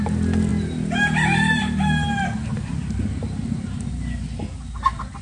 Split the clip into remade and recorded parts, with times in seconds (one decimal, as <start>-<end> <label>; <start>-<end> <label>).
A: 0.0-5.2 recorded

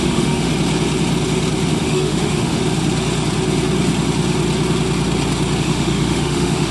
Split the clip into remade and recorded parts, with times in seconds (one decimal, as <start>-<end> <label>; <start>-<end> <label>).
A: 0.0-0.5 remade; 0.5-1.7 recorded; 1.7-2.6 remade; 2.6-5.6 recorded; 5.6-6.7 remade